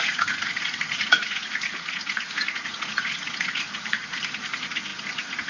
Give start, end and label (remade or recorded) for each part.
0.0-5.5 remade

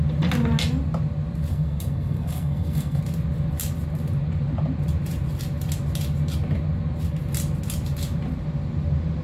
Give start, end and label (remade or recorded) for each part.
0.0-1.5 recorded; 1.5-3.0 remade; 3.0-9.2 recorded

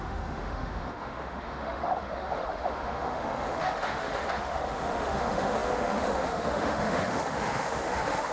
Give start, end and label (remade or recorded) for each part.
0.0-8.3 remade